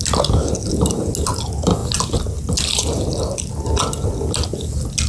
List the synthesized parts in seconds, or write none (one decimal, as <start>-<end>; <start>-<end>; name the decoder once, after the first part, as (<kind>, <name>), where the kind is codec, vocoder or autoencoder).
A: none